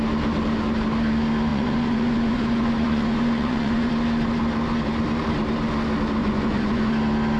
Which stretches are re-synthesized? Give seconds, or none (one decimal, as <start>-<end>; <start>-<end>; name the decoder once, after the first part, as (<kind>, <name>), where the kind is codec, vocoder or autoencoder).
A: 1.5-3.9 (vocoder, Vocos); 6.2-6.9